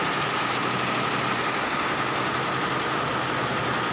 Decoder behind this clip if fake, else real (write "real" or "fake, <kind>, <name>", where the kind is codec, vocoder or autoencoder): real